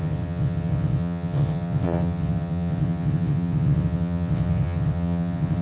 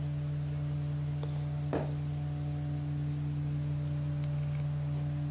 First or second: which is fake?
first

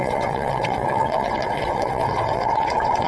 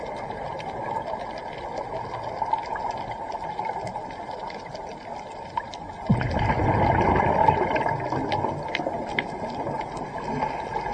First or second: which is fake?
first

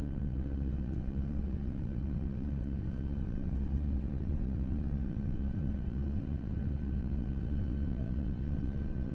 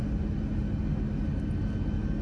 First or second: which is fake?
first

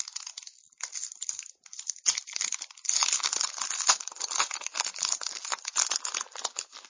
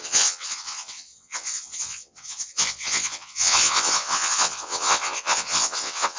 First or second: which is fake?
second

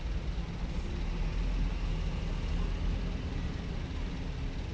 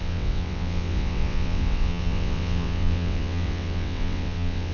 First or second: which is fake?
second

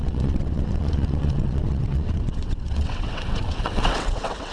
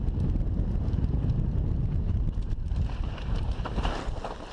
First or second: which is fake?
first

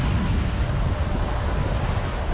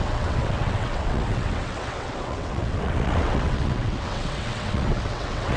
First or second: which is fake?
second